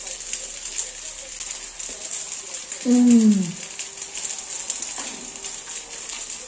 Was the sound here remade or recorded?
recorded